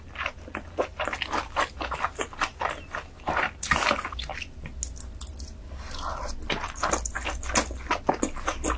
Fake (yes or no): no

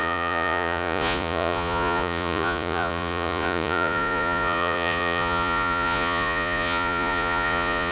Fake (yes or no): yes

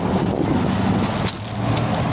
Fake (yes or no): no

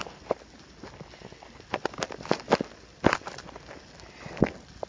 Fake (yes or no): no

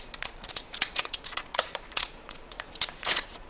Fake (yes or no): yes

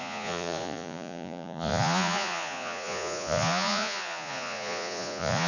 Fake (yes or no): yes